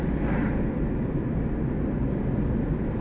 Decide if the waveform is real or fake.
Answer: real